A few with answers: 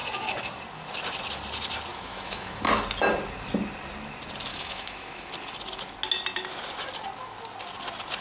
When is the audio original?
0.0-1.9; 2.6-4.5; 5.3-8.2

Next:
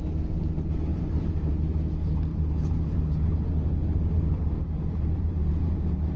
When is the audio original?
0.0-0.9; 1.6-2.3

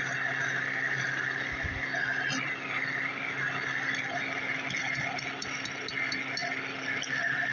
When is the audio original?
0.0-7.5

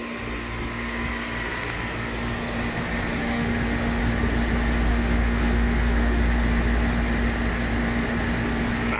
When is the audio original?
0.0-3.2; 4.0-4.9; 6.2-9.0

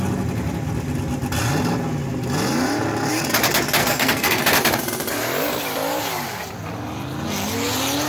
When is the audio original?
0.0-3.8; 4.4-8.1